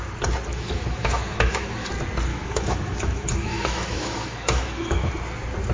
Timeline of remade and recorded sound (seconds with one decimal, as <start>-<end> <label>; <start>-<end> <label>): 0.0-0.5 recorded; 0.5-1.9 remade; 1.9-2.3 recorded; 2.3-5.1 remade; 5.1-5.7 recorded